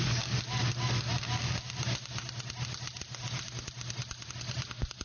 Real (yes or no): yes